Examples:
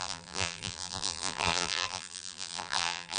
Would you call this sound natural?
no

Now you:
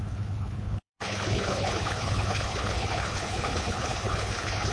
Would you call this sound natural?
no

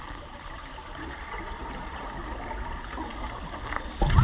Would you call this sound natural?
yes